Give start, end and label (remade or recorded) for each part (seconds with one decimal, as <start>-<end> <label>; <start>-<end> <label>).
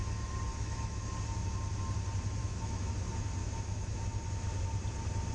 0.0-0.5 recorded; 0.5-1.1 remade; 1.1-2.4 recorded; 2.4-2.9 remade; 2.9-3.4 recorded; 3.4-4.1 remade; 4.1-5.3 recorded